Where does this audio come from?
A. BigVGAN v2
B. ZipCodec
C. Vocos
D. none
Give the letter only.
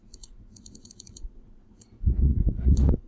C